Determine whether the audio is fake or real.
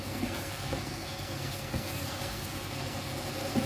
fake